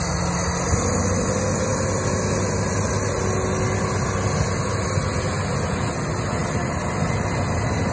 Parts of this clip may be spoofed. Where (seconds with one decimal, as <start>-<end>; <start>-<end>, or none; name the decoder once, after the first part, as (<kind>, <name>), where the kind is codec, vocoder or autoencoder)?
6.4-7.4 (vocoder, BigVGAN v2)